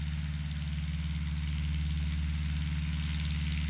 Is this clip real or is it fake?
real